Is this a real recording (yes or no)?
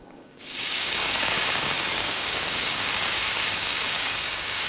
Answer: no